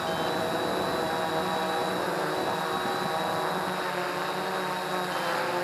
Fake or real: real